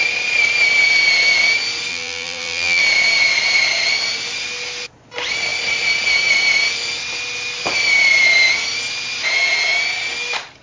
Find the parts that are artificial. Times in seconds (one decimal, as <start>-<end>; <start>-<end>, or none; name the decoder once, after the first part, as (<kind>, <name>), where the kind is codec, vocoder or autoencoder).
1.9-2.8 (vocoder, BigVGAN v2)